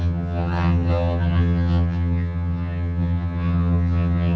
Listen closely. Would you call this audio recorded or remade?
remade